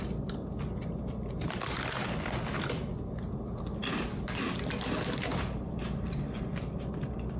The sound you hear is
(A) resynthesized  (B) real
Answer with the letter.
B